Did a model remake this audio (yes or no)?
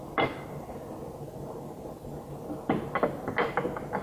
no